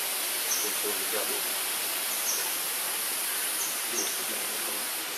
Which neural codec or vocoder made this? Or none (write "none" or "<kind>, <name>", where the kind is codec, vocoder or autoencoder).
none